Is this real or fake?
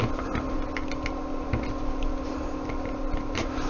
real